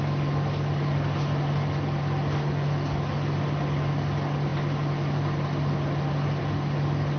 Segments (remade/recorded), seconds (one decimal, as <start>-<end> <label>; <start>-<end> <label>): 0.0-7.2 recorded